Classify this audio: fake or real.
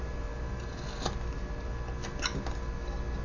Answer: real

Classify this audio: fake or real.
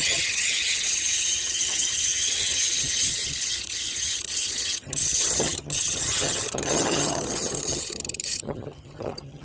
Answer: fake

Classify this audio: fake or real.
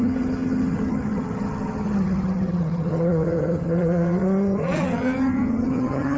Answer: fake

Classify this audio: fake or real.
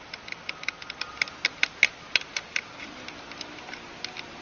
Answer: real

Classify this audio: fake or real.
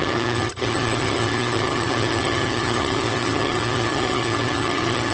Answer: fake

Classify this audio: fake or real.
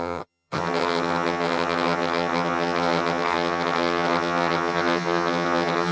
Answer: fake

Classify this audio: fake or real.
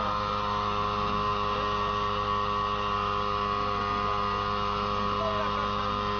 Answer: real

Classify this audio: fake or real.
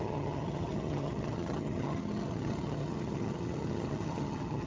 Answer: fake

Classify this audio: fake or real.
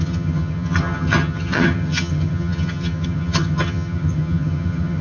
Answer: fake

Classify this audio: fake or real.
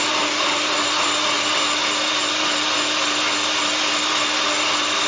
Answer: real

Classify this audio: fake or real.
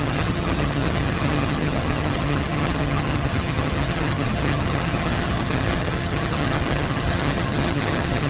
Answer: fake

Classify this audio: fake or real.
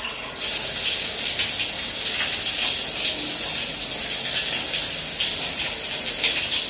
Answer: real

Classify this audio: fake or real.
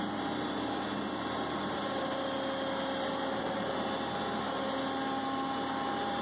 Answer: real